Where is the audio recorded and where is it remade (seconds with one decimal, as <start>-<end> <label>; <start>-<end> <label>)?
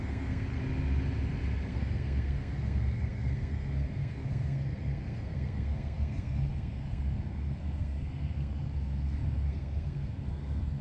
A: 0.0-0.6 remade; 0.6-1.7 recorded; 1.7-10.8 remade